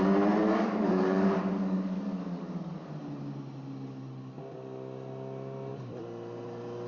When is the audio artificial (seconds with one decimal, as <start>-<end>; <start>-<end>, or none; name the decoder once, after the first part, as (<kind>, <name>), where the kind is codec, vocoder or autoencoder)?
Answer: 0.4-2.9 (codec, DAC)